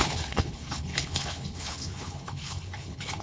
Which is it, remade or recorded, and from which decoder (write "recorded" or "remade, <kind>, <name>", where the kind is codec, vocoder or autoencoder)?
remade, codec, HILCodec